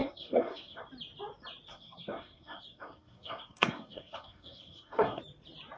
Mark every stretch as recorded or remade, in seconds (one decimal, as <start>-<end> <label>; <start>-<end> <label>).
0.0-0.8 remade; 0.8-1.7 recorded; 1.7-5.2 remade; 5.2-5.8 recorded